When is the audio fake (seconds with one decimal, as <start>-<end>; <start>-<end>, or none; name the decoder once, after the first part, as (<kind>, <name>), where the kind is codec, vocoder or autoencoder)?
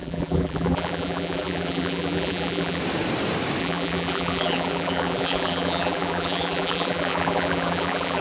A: 0.0-2.8 (vocoder, BigVGAN v2); 3.6-8.2